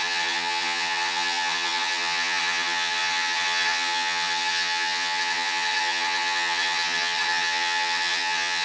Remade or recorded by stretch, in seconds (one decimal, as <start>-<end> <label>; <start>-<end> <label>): 0.0-8.6 remade